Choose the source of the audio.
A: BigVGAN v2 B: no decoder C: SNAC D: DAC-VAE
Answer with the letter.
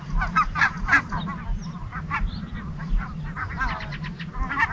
B